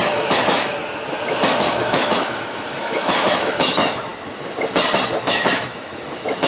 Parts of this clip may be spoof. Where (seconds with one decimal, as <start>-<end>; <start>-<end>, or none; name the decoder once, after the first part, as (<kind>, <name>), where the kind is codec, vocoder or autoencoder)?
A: 0.0-0.8 (autoencoder, DAC-VAE); 1.6-4.1; 5.2-6.5